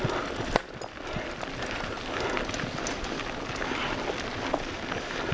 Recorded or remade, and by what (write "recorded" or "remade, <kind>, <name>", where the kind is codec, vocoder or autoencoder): recorded